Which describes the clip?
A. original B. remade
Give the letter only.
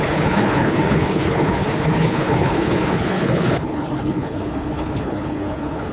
B